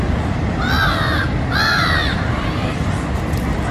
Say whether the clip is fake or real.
real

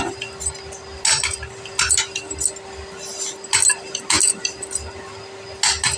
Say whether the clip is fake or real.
real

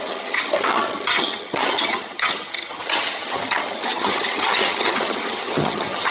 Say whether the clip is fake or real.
fake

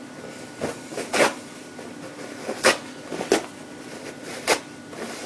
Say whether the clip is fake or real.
real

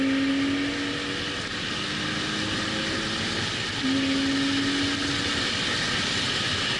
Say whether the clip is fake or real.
real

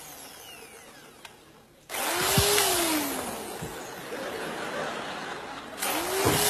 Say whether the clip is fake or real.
real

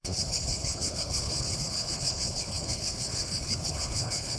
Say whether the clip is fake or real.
fake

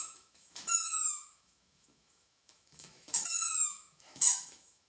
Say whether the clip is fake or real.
fake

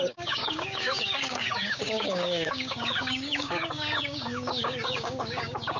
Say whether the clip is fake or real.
fake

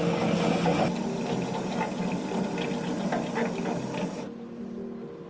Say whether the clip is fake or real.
real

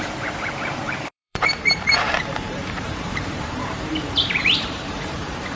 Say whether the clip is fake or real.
fake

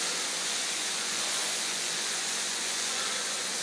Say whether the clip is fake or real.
fake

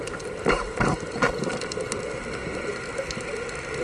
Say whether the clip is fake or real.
real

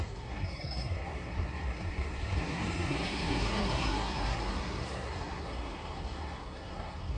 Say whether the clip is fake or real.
fake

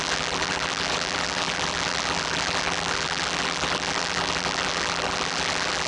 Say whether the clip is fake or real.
fake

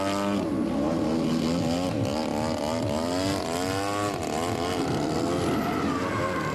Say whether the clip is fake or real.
real